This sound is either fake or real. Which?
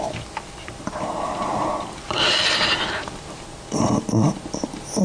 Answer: real